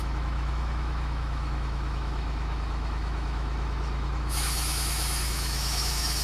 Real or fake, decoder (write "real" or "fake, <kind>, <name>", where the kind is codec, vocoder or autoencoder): fake, autoencoder, DAC-VAE